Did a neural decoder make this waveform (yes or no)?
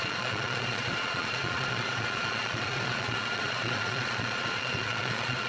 yes